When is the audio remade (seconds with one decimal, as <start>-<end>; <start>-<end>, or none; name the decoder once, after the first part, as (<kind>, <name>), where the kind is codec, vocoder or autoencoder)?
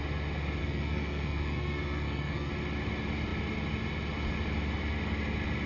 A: 0.6-2.5 (codec, SNAC)